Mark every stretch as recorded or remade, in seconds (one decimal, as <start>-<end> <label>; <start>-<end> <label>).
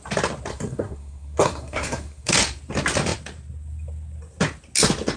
0.0-0.5 recorded; 0.5-2.3 remade; 2.3-5.2 recorded